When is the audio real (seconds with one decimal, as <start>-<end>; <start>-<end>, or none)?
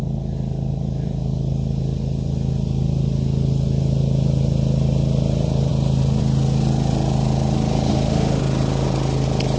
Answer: 0.0-7.9; 8.4-9.6